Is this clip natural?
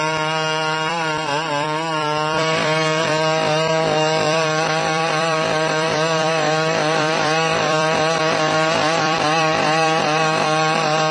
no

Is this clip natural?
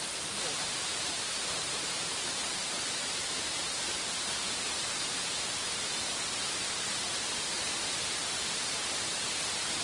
no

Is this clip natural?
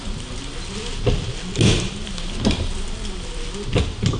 yes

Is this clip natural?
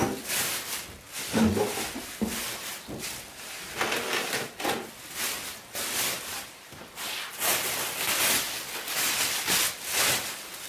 yes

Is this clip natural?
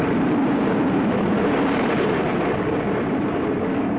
no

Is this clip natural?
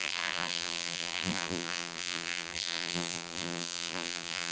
no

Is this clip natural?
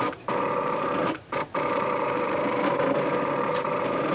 no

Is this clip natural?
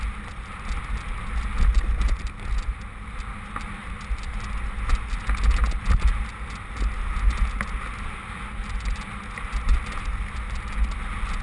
yes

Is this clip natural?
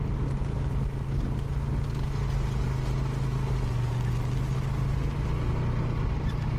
yes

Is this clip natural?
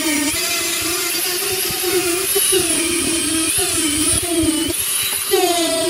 no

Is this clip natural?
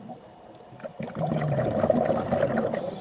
no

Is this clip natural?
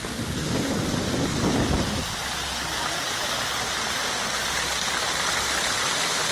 yes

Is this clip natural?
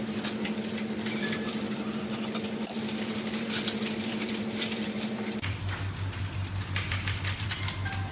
no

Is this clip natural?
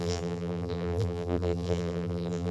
no